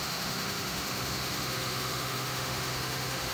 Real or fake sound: fake